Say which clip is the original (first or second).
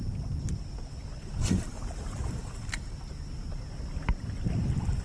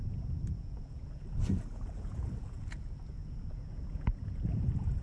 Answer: first